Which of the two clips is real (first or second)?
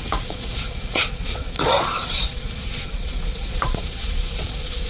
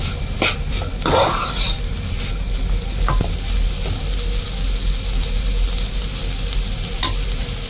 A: second